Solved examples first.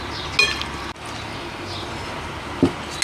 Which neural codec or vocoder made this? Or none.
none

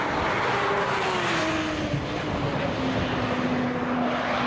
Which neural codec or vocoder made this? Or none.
none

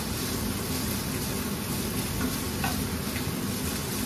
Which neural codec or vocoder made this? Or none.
none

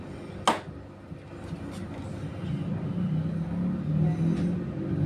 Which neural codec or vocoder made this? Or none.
none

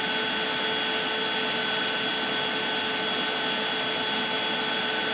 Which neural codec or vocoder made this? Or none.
none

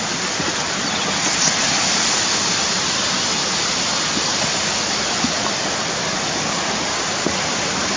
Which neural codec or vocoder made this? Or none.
none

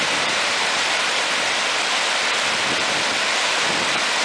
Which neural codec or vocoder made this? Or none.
none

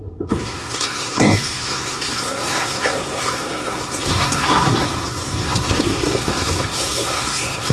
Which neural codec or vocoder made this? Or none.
codec, SNAC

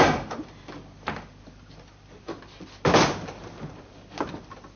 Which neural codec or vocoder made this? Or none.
none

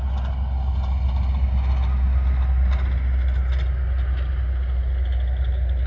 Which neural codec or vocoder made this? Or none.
none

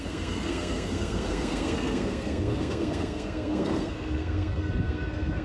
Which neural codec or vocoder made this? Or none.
codec, SNAC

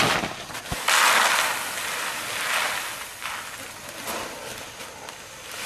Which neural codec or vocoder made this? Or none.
none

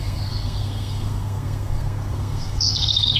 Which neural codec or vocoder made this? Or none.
codec, SNAC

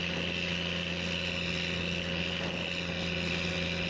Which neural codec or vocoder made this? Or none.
none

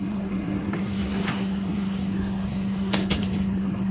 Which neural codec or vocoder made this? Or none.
codec, SNAC